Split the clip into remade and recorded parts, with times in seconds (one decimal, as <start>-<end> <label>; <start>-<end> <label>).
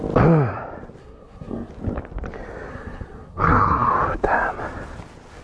0.0-1.0 recorded; 1.0-1.7 remade; 1.7-2.7 recorded; 2.7-3.9 remade; 3.9-5.4 recorded